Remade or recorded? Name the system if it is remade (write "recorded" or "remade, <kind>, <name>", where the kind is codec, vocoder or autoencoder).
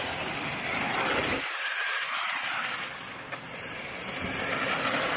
recorded